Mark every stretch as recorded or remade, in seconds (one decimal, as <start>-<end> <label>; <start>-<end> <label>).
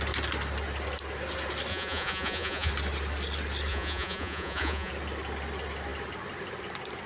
0.0-1.7 recorded; 1.7-2.7 remade; 2.7-3.7 recorded; 3.7-4.9 remade; 4.9-7.1 recorded